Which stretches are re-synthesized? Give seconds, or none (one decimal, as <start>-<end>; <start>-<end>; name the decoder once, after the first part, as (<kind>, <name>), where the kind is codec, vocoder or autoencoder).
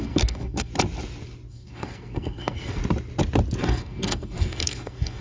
0.0-0.7 (codec, SNAC); 1.5-2.8; 3.6-5.2